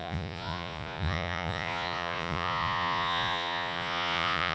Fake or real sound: fake